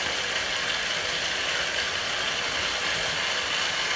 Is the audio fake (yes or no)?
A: no